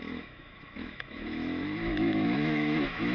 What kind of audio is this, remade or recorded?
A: remade